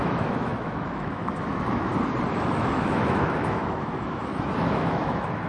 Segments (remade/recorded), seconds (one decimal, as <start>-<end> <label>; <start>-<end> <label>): 0.0-1.9 remade; 1.9-2.4 recorded; 2.4-5.5 remade